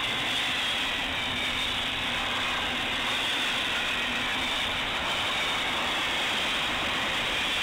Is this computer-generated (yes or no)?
yes